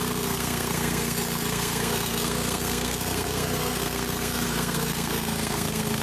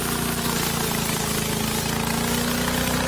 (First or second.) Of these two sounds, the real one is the second